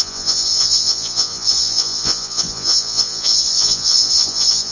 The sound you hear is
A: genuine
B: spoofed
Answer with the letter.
B